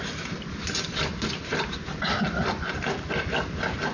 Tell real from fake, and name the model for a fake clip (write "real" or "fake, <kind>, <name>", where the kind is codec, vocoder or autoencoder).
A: real